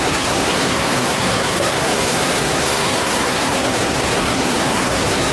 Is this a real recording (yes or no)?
no